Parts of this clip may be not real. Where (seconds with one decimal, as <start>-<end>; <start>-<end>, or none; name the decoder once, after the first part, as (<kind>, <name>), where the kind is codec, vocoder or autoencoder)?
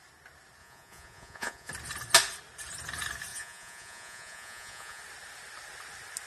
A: 0.6-1.7 (vocoder, Vocos); 3.3-5.0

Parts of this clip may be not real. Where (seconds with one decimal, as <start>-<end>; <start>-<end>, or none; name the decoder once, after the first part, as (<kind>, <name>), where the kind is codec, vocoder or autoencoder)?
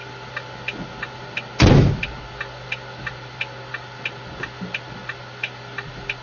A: none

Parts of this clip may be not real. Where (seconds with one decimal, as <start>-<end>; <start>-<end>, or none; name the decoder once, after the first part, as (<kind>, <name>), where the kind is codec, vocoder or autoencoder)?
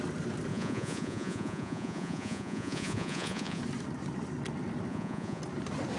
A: 0.5-3.6 (vocoder, Vocos); 4.9-5.4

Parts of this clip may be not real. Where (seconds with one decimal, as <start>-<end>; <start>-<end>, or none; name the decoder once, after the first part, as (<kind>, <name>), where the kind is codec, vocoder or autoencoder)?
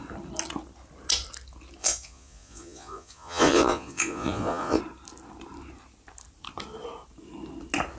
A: 1.8-4.8 (vocoder, Vocos)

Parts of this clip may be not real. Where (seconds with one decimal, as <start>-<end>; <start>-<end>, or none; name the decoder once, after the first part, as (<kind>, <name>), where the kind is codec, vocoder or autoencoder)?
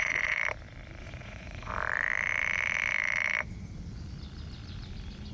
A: 0.0-0.4 (vocoder, Vocos); 1.0-1.7